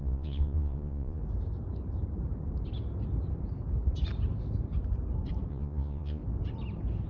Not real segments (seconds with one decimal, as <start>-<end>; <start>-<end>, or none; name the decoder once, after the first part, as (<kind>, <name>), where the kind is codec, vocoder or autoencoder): 0.0-1.2 (vocoder, Vocos); 5.5-6.2